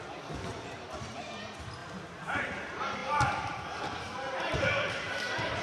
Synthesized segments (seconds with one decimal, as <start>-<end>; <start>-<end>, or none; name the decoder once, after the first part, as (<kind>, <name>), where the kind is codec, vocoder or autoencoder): 0.0-1.8 (vocoder, BigVGAN v2); 2.4-5.6